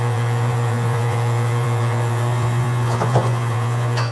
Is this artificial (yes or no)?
yes